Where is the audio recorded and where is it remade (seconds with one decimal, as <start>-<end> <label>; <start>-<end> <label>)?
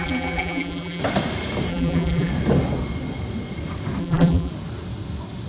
0.0-1.0 remade; 1.0-1.7 recorded; 1.7-2.3 remade; 2.3-4.0 recorded; 4.0-4.5 remade; 4.5-5.5 recorded